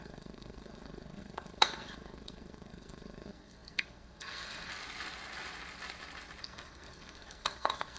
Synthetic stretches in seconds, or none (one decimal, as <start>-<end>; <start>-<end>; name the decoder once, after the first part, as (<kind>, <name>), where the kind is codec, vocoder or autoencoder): 0.0-4.7 (codec, SNAC); 6.4-8.0